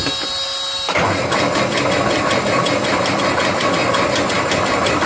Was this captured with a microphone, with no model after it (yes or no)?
yes